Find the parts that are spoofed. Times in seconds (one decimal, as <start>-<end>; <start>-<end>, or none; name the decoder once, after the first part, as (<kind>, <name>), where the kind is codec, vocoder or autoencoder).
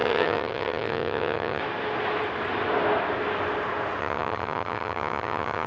0.0-1.6 (vocoder, HiFi-GAN); 4.0-5.7